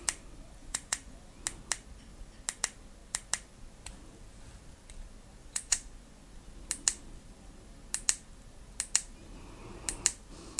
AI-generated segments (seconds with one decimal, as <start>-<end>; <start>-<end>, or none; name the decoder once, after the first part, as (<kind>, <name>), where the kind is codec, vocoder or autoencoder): 0.6-1.2 (vocoder, Vocos); 5.4-6.2